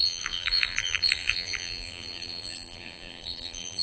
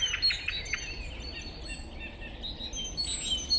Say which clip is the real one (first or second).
second